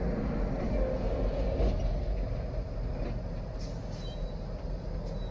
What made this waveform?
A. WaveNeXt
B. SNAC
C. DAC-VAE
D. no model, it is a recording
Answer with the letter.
D